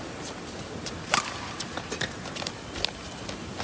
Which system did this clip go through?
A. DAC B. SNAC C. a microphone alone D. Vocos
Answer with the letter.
C